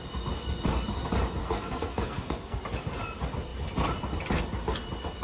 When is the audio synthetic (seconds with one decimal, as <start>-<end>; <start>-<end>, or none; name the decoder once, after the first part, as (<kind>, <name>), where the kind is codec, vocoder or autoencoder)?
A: 1.4-2.6 (codec, SNAC)